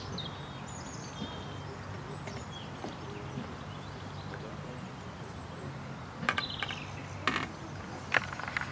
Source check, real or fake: real